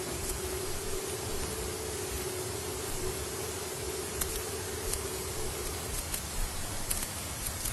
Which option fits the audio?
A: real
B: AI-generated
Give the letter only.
A